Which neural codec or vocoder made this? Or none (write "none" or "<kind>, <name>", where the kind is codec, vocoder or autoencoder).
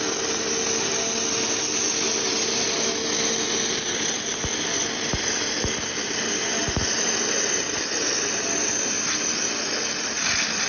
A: none